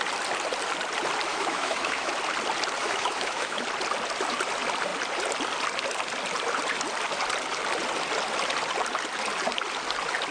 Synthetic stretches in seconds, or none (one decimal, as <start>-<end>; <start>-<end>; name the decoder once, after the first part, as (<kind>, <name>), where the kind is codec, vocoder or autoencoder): 1.3-2.1 (autoencoder, DAC-VAE); 2.8-3.6